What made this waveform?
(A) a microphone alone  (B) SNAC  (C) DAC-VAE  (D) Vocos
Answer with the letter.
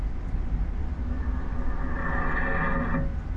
A